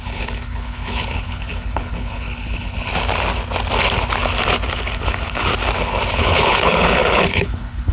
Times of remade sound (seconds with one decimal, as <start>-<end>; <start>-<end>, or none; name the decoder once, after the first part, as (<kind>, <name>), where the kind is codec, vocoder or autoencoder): 0.0-2.9 (codec, HILCodec); 4.7-5.5; 6.1-7.9